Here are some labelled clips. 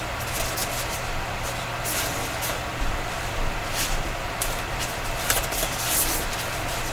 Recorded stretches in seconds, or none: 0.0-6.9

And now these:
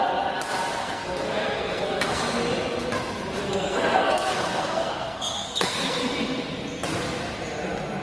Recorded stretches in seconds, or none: 0.0-0.7; 2.2-3.4; 6.1-8.0

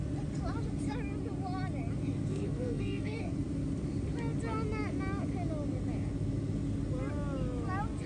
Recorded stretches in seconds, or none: 0.0-2.3; 3.2-8.1

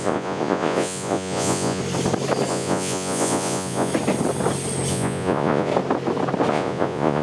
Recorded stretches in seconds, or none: 1.8-2.5; 3.9-4.9; 5.7-6.5